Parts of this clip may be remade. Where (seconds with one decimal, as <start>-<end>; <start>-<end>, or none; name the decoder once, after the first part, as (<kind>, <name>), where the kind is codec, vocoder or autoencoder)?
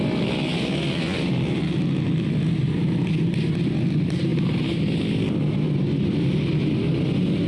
none